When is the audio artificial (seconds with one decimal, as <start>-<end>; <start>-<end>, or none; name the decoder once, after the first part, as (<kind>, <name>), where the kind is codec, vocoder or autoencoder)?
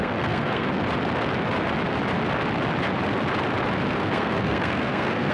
0.0-0.7 (codec, SNAC); 3.9-5.3